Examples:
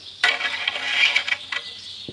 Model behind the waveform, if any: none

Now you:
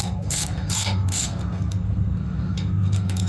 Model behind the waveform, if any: codec, SNAC